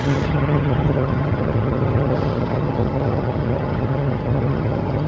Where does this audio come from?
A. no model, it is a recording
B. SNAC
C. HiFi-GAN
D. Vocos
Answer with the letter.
C